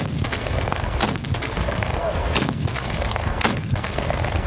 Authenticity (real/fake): fake